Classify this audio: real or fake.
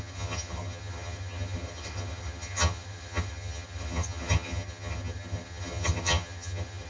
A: fake